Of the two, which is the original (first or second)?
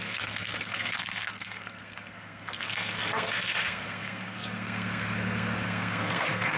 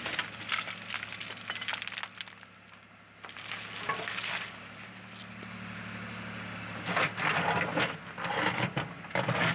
second